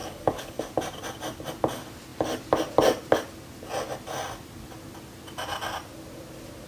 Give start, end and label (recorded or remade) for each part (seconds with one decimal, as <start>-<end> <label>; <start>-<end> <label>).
0.0-0.7 remade; 0.7-6.7 recorded